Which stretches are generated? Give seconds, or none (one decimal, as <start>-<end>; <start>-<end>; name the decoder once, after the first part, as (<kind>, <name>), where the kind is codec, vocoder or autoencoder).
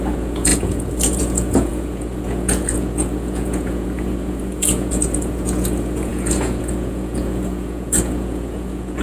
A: 0.0-9.0 (vocoder, Vocos)